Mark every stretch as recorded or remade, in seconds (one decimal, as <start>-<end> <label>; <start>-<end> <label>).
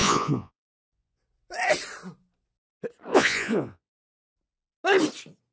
0.0-1.2 remade; 1.2-3.1 recorded; 3.1-4.1 remade; 4.1-5.5 recorded